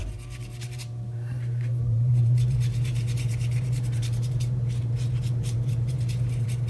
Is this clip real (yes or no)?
no